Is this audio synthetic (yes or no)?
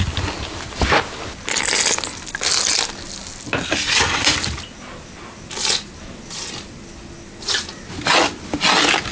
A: no